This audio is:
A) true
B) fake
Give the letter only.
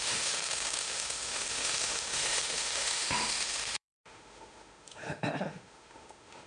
B